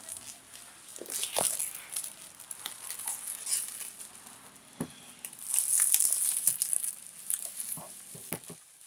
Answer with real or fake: real